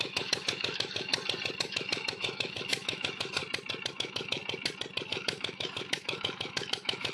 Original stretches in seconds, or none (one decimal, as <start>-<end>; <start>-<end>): 1.1-1.6; 3.4-3.9; 4.4-5.1